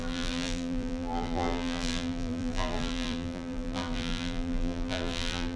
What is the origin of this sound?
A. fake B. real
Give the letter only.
A